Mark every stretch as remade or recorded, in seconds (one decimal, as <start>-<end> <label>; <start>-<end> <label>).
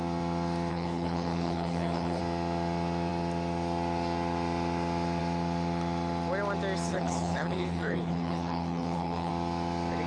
0.0-0.7 recorded; 0.7-2.2 remade; 2.2-6.9 recorded; 6.9-9.3 remade; 9.3-10.1 recorded